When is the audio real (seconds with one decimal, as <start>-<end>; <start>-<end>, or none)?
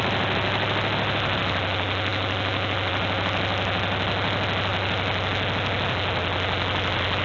0.0-7.2